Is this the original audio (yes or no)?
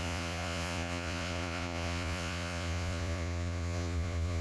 no